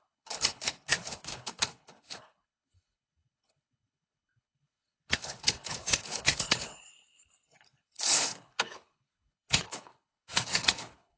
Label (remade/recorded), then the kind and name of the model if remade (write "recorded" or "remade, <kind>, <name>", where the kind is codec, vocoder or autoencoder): remade, codec, HILCodec